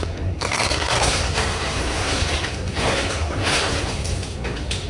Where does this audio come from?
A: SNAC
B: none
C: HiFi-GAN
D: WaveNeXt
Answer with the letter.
A